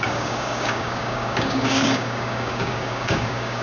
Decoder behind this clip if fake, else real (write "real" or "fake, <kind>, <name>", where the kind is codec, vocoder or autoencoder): fake, codec, DAC